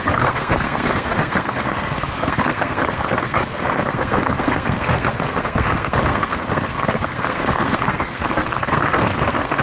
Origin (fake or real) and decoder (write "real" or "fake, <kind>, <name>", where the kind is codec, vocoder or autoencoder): fake, codec, SNAC